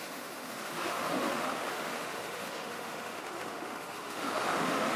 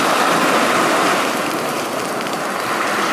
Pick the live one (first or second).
second